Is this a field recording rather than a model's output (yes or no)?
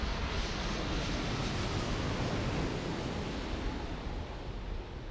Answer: yes